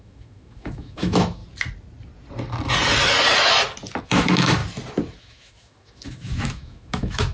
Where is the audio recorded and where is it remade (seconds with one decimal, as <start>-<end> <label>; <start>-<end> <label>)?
0.0-1.4 remade; 1.4-4.0 recorded; 4.0-4.6 remade; 4.6-5.2 recorded; 5.2-7.3 remade